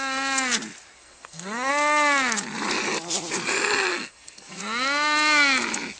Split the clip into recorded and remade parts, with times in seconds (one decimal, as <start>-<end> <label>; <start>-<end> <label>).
0.0-1.0 recorded; 1.0-1.7 remade; 1.7-3.9 recorded; 3.9-4.6 remade; 4.6-6.0 recorded

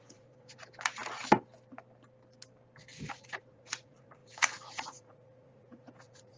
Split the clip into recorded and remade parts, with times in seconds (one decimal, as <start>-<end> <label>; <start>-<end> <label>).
0.0-0.6 remade; 0.6-3.1 recorded; 3.1-6.4 remade

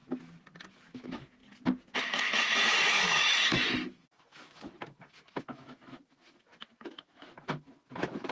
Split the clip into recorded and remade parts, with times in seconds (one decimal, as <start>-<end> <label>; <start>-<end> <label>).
0.0-0.7 recorded; 0.7-1.4 remade; 1.4-2.0 recorded; 2.0-8.3 remade

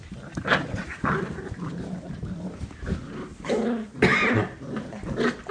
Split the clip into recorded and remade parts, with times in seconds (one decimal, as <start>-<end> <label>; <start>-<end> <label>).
0.0-5.5 recorded

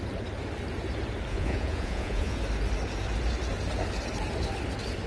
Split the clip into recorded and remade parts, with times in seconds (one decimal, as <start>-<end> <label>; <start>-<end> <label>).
0.0-1.3 recorded; 1.3-2.4 remade; 2.4-5.1 recorded

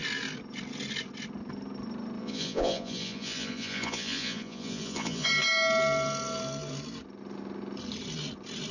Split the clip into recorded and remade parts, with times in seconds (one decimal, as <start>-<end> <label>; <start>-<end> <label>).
0.0-2.2 recorded; 2.2-5.3 remade; 5.3-8.7 recorded

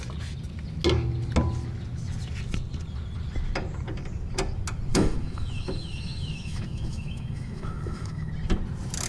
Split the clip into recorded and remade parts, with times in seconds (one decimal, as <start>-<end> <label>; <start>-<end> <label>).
0.0-4.9 recorded; 4.9-8.3 remade; 8.3-9.1 recorded

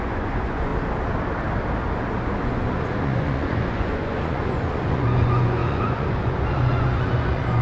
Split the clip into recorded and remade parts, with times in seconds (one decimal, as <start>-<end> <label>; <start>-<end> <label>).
0.0-0.7 remade; 0.7-2.4 recorded; 2.4-7.6 remade